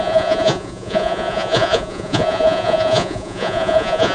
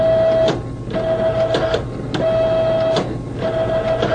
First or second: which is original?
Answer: second